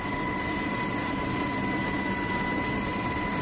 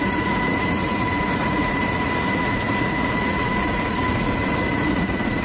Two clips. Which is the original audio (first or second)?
first